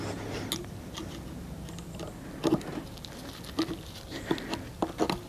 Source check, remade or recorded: recorded